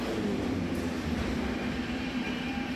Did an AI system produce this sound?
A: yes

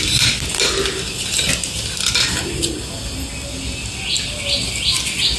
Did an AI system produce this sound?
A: no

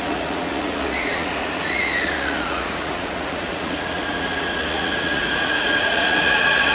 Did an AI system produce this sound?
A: yes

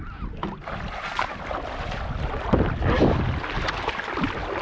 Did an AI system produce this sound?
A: no